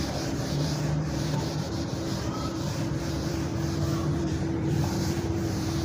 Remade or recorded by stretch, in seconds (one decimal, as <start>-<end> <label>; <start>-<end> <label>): 0.0-3.5 remade; 3.5-4.1 recorded; 4.1-5.8 remade